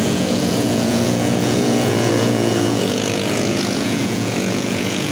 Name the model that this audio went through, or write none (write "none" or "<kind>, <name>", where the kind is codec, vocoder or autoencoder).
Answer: vocoder, Vocos